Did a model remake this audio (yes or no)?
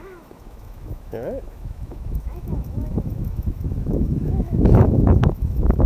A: yes